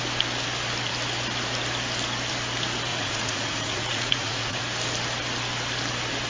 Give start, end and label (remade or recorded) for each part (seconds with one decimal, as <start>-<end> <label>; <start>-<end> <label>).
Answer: 0.0-2.9 recorded; 2.9-4.6 remade; 4.6-6.3 recorded